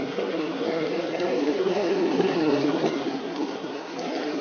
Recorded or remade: remade